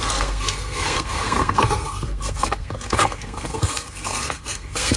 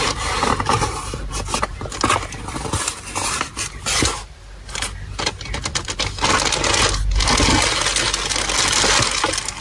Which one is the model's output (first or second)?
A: first